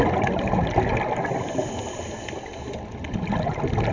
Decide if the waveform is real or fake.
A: real